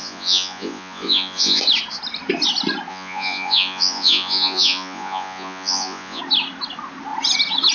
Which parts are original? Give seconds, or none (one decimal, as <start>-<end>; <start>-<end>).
1.6-2.9; 6.2-7.7